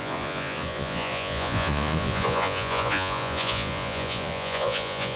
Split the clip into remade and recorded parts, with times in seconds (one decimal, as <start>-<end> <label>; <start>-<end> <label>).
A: 0.0-5.2 remade